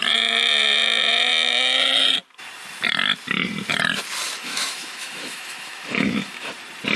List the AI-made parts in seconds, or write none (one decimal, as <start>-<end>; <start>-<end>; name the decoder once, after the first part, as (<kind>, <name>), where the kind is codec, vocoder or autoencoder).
4.4-6.5 (autoencoder, DAC-VAE)